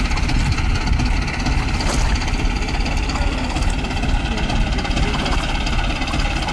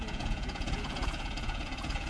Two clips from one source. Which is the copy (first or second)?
second